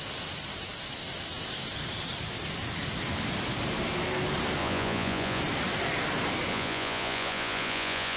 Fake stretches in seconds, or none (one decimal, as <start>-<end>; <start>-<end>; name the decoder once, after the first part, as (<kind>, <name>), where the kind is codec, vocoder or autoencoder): 4.6-5.4 (vocoder, Vocos); 6.5-8.2